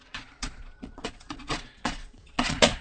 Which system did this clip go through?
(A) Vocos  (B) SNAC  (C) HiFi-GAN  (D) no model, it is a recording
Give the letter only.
A